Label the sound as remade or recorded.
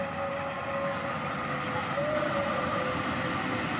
recorded